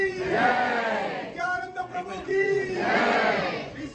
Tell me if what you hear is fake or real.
fake